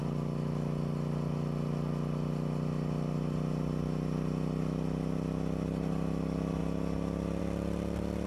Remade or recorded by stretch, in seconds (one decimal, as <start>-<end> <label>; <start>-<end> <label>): 0.0-8.3 recorded